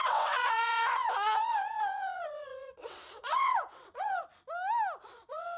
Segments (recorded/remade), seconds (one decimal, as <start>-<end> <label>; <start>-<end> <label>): 0.0-4.2 remade; 4.2-5.0 recorded; 5.0-5.6 remade